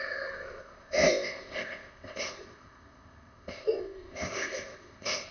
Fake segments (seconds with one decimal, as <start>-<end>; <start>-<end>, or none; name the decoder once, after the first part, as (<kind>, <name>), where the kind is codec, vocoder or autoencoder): 0.0-5.3 (codec, ZipCodec)